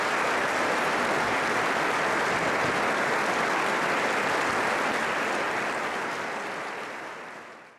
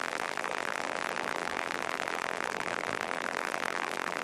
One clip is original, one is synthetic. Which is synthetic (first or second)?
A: second